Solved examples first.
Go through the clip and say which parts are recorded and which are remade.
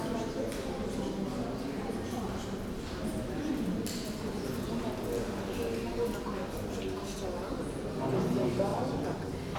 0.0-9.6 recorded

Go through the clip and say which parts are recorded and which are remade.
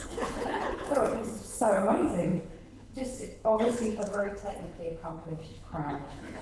0.0-6.4 remade